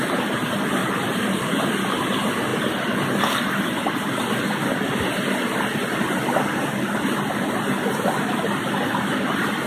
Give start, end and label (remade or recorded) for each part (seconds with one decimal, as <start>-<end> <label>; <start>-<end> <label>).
0.0-0.8 recorded; 0.8-1.7 remade; 1.7-9.7 recorded